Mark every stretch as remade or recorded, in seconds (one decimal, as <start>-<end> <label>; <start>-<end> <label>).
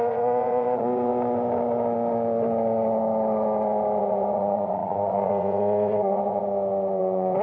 0.0-1.1 remade; 1.1-4.0 recorded; 4.0-6.4 remade; 6.4-7.0 recorded; 7.0-7.4 remade